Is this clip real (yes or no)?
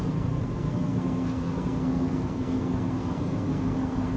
no